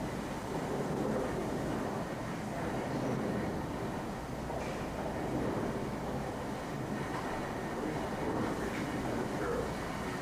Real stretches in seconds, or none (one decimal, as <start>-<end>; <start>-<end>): 0.0-5.8; 6.3-10.2